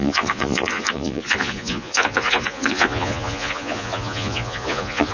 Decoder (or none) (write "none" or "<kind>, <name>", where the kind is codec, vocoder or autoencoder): vocoder, Vocos